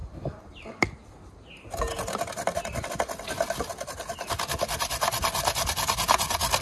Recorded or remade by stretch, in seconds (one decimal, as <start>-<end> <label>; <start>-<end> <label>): 0.0-6.6 recorded